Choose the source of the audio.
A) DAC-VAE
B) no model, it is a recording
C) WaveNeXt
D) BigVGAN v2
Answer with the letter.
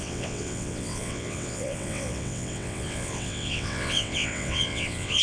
C